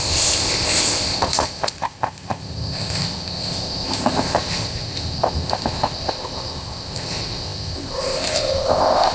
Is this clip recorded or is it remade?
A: remade